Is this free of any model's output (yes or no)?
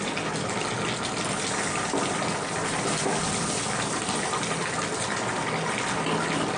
yes